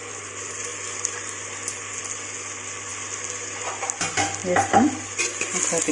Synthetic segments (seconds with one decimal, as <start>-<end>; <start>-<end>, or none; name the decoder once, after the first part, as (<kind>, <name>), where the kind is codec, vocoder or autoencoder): none